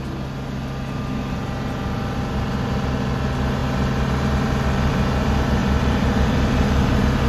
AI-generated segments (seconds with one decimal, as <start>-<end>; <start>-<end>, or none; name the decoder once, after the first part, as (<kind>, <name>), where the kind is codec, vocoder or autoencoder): 5.6-6.8 (vocoder, BigVGAN v2)